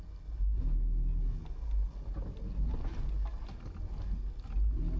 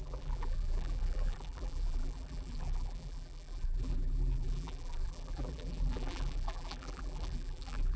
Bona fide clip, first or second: first